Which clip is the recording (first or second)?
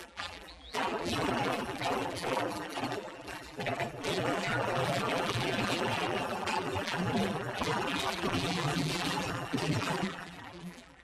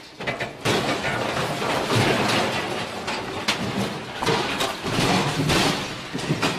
second